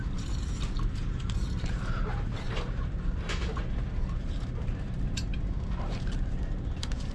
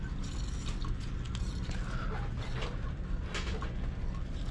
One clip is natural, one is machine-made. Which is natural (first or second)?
second